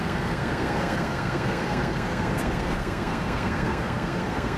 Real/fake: fake